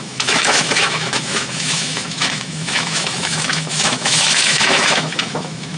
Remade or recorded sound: remade